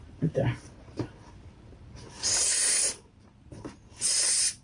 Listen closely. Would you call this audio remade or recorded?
remade